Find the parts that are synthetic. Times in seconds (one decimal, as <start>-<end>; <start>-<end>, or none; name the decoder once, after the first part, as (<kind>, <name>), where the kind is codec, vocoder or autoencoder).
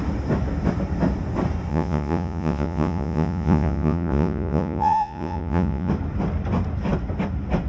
1.7-5.9 (vocoder, Vocos)